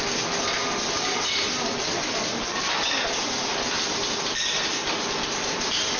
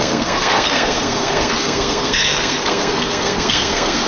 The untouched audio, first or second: first